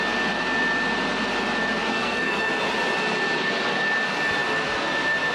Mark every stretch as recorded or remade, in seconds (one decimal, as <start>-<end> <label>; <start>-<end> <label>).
0.0-1.9 recorded; 1.9-2.5 remade; 2.5-5.3 recorded